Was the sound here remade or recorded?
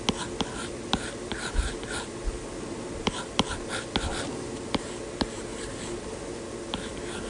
recorded